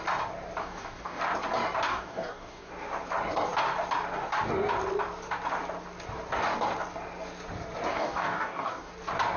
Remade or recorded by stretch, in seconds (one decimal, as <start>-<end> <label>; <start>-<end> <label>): 0.0-0.6 recorded; 0.6-1.2 remade; 1.2-1.9 recorded; 1.9-2.7 remade; 2.7-7.9 recorded; 7.9-8.9 remade; 8.9-9.4 recorded